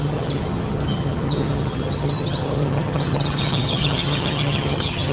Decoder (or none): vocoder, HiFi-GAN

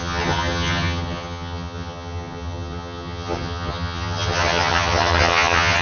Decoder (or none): vocoder, HiFi-GAN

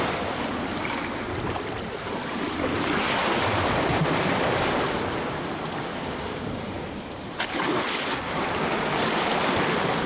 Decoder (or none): none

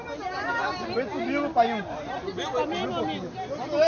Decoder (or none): none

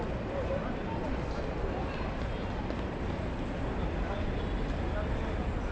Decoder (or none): none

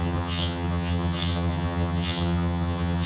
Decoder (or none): vocoder, HiFi-GAN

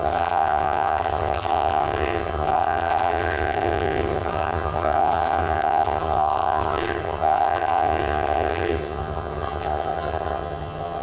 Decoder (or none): vocoder, HiFi-GAN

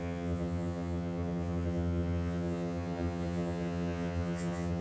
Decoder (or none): vocoder, HiFi-GAN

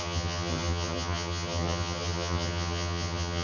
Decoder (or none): vocoder, HiFi-GAN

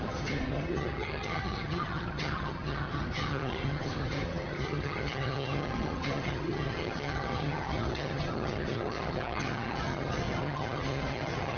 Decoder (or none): vocoder, HiFi-GAN